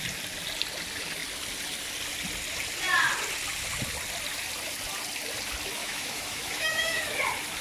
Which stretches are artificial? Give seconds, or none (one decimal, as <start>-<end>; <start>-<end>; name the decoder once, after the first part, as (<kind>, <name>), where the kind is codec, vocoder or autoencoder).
5.8-7.1 (autoencoder, DAC-VAE)